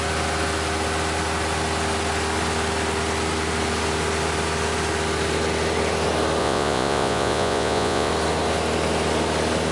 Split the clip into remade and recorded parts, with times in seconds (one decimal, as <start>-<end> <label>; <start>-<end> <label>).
0.0-6.4 recorded; 6.4-8.1 remade; 8.1-9.7 recorded